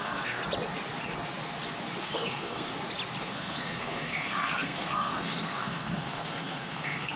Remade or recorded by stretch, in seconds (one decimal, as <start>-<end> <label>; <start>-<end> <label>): 0.0-0.4 remade; 0.4-2.0 recorded; 2.0-2.7 remade; 2.7-3.2 recorded; 3.2-7.2 remade